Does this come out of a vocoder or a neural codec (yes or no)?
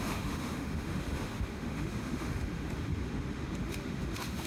yes